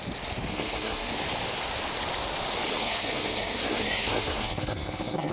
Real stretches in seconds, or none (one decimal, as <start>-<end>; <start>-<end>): 0.0-0.5; 1.1-2.7